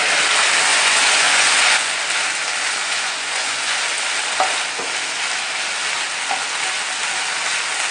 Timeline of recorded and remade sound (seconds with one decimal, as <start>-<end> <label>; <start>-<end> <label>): 0.0-0.7 recorded; 0.7-2.0 remade; 2.0-2.8 recorded; 2.8-3.8 remade; 3.8-7.9 recorded